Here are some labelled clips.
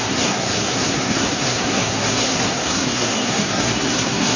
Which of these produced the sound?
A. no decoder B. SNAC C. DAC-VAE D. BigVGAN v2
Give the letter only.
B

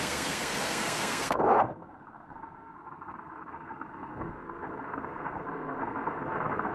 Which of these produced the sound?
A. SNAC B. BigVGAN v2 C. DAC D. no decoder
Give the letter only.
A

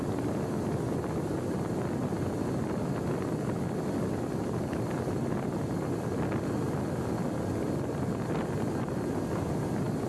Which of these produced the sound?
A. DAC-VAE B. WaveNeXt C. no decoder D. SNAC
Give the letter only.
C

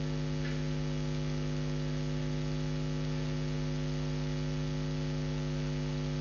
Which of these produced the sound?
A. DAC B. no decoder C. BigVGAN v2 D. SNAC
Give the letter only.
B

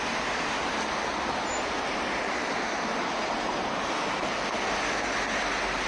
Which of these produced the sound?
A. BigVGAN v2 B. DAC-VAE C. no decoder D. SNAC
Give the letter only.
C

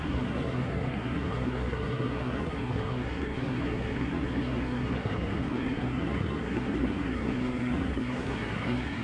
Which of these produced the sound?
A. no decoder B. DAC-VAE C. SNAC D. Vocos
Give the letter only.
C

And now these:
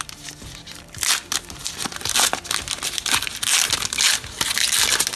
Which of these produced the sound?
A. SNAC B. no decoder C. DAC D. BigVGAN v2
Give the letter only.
B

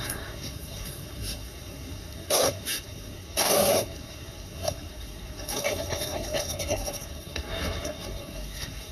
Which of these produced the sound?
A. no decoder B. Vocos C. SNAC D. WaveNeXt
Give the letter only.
C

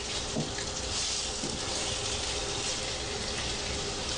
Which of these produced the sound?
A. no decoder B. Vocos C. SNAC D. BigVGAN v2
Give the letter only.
A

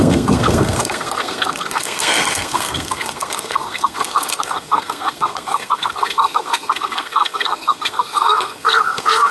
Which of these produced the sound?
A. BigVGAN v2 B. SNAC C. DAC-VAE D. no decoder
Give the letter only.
B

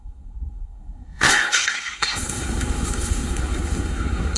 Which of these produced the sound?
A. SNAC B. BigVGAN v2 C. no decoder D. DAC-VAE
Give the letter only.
A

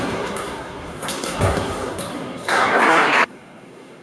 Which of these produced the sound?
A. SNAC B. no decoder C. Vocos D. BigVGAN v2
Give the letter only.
A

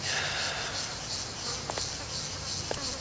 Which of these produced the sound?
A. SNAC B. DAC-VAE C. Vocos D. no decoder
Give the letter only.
D